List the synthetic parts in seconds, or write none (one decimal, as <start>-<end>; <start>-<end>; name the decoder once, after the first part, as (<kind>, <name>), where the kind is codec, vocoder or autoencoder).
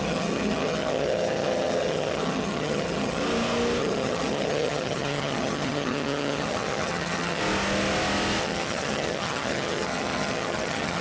0.0-3.2 (vocoder, HiFi-GAN); 3.8-7.4; 8.4-11.0